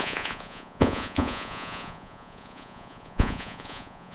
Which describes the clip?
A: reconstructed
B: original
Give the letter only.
A